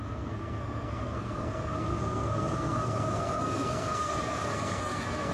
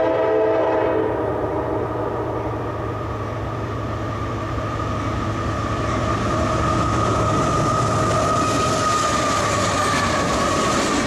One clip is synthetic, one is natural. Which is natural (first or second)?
second